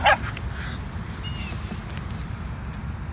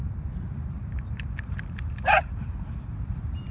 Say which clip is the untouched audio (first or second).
first